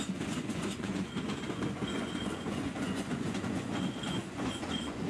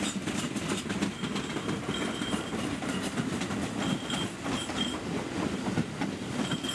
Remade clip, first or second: first